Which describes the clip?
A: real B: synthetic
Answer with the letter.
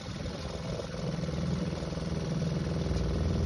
A